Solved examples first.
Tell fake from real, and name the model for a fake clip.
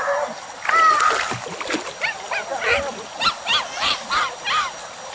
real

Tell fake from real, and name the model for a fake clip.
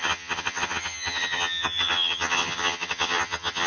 fake, vocoder, HiFi-GAN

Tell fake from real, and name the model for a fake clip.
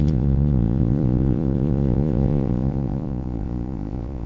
fake, vocoder, Vocos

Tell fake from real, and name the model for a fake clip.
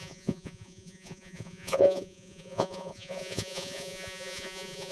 fake, vocoder, Vocos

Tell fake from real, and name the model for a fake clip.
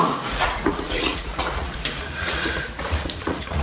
fake, vocoder, Vocos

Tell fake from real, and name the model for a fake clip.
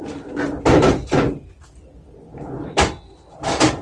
real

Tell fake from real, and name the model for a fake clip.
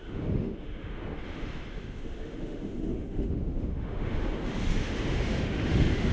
fake, autoencoder, DAC-VAE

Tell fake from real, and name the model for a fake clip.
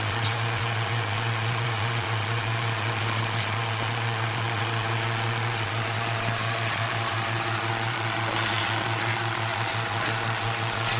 fake, vocoder, Vocos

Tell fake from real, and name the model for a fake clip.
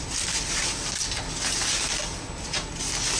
real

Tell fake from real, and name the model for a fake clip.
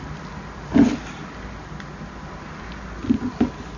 real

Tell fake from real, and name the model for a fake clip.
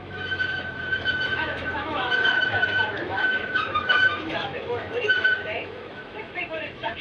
fake, autoencoder, DAC-VAE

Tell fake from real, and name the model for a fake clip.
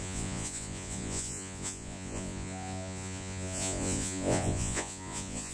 fake, vocoder, Vocos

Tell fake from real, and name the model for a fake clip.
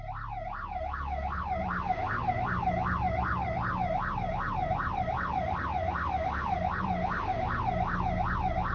real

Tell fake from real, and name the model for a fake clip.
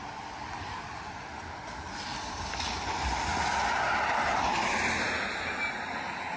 real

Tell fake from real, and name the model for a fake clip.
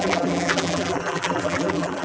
fake, vocoder, BigVGAN v2